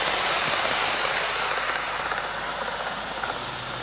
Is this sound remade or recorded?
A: recorded